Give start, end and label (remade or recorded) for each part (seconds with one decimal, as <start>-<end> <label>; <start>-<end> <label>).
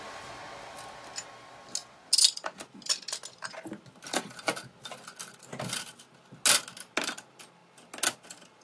0.0-8.6 recorded